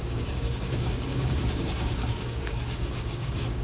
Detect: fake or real fake